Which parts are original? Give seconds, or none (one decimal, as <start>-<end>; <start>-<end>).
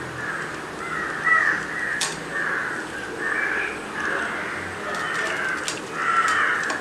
0.0-6.8